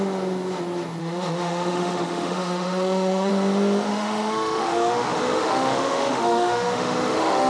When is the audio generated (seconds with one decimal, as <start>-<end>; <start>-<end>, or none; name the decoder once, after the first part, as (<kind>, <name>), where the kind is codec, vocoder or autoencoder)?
1.0-3.3 (autoencoder, DAC-VAE); 3.9-7.5